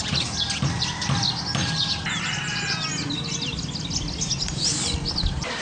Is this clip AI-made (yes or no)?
no